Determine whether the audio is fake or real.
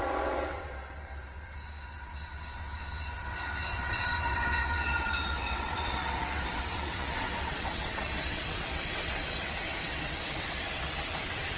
fake